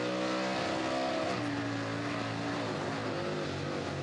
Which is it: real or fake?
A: real